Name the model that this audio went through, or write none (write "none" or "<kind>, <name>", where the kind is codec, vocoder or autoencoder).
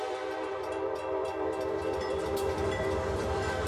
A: vocoder, BigVGAN v2